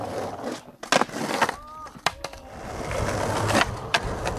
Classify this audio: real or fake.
real